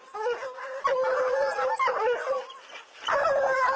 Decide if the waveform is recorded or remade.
recorded